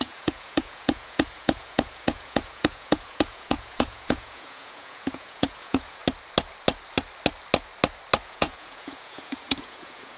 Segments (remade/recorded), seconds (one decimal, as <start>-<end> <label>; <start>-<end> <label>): 0.0-6.0 remade; 6.0-8.2 recorded; 8.2-10.2 remade